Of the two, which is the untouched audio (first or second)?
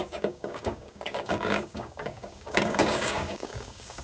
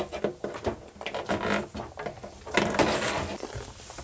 second